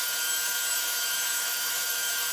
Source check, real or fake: fake